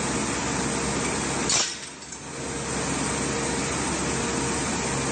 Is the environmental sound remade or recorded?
recorded